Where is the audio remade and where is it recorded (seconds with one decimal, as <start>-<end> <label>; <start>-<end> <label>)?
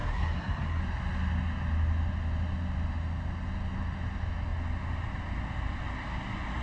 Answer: 0.0-0.8 remade; 0.8-6.6 recorded